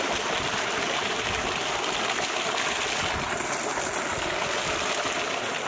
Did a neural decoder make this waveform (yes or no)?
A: no